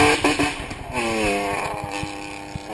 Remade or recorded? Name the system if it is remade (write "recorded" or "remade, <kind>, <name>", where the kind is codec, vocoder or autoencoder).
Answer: recorded